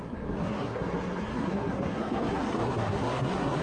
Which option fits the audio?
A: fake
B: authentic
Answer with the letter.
A